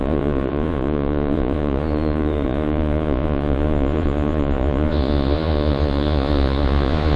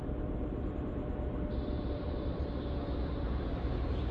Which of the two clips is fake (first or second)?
first